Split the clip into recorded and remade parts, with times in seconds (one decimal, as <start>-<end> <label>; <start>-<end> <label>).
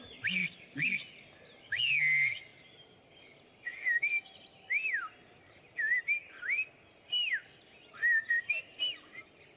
0.0-9.6 recorded